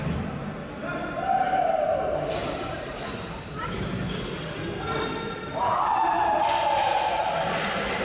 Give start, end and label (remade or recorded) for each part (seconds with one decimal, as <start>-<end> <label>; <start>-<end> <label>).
0.0-2.4 recorded; 2.4-3.7 remade; 3.7-5.7 recorded; 5.7-7.2 remade; 7.2-8.0 recorded